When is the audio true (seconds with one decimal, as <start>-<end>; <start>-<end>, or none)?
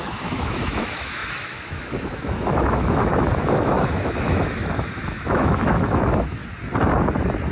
6.4-7.5